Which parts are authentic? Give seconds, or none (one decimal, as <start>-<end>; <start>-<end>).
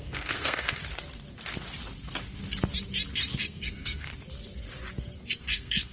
0.8-3.4; 4.1-5.4